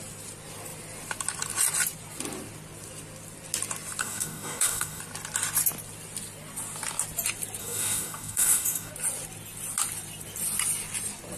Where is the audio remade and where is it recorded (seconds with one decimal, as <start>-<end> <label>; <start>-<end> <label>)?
0.0-4.0 recorded; 4.0-5.0 remade; 5.0-7.6 recorded; 7.6-8.9 remade; 8.9-11.4 recorded